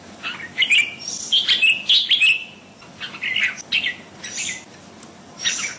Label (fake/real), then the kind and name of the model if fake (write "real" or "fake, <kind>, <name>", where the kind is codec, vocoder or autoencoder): real